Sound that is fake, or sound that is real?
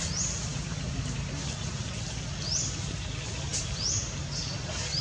real